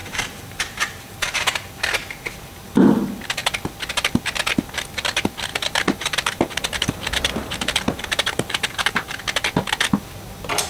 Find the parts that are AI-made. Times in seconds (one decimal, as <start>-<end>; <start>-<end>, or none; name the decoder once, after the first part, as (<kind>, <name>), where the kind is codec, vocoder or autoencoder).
0.0-1.6 (vocoder, BigVGAN v2); 5.5-9.2